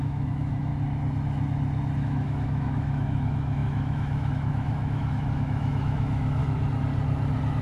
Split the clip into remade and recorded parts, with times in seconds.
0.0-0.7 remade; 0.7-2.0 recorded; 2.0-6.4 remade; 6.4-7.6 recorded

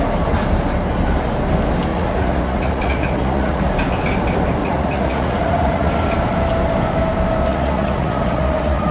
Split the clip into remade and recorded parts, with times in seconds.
0.0-1.9 recorded; 1.9-3.7 remade; 3.7-4.6 recorded; 4.6-5.9 remade; 5.9-7.5 recorded; 7.5-8.9 remade

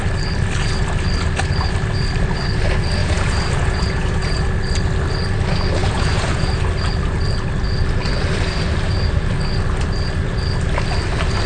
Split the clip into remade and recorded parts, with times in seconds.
0.0-3.0 recorded; 3.0-4.5 remade; 4.5-5.8 recorded; 5.8-6.6 remade; 6.6-11.5 recorded